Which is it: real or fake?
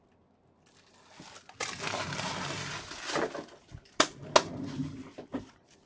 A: real